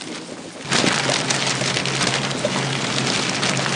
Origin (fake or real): real